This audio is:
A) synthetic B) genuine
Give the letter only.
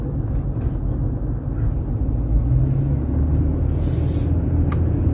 B